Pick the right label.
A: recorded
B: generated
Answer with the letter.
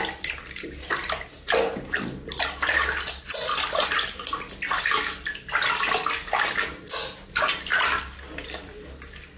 A